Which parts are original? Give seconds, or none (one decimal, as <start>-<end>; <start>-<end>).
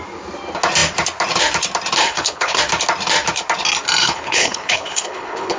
0.0-2.0; 2.6-4.0